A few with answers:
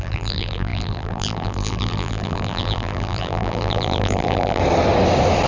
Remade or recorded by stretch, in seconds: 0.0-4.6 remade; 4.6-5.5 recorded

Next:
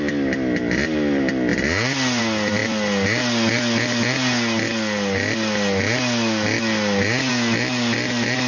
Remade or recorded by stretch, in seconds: 0.0-8.5 recorded

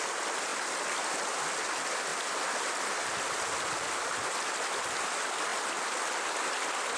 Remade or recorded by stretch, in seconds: 0.0-7.0 recorded

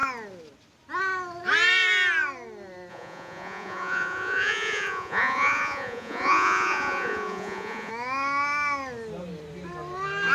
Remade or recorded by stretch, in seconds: 0.0-2.9 recorded; 2.9-7.9 remade; 7.9-10.3 recorded

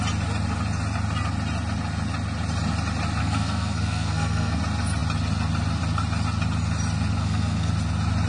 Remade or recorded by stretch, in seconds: 0.0-3.2 recorded; 3.2-4.6 remade; 4.6-7.2 recorded; 7.2-7.7 remade; 7.7-8.3 recorded

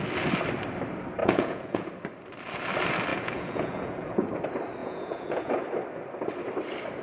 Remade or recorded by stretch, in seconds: 0.0-1.2 recorded; 1.2-1.9 remade; 1.9-3.1 recorded; 3.1-4.3 remade; 4.3-4.8 recorded; 4.8-5.5 remade; 5.5-7.0 recorded